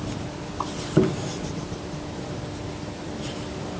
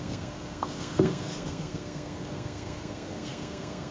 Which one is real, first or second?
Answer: first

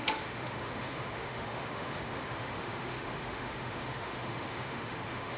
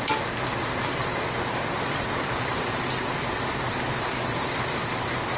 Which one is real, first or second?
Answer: second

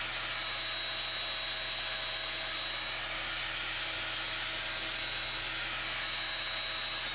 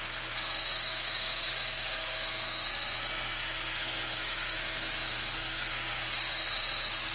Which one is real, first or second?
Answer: first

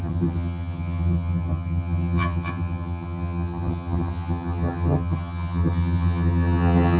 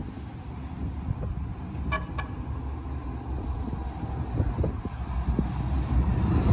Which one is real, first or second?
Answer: second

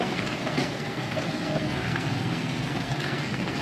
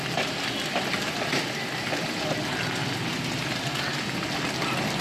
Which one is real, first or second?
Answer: second